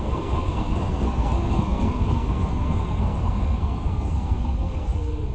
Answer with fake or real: fake